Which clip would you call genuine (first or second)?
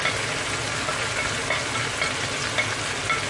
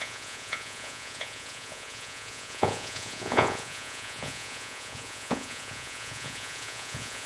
first